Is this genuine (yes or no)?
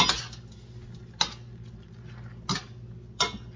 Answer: yes